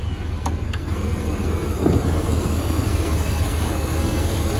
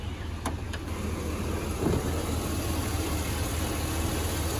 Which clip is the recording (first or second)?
second